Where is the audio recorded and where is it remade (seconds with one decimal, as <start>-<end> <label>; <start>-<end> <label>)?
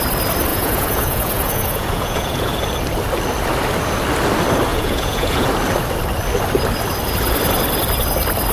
0.0-0.5 recorded; 0.5-2.5 remade; 2.5-4.7 recorded; 4.7-5.5 remade; 5.5-8.5 recorded